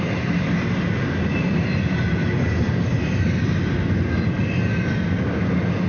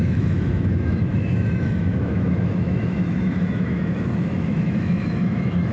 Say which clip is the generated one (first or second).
second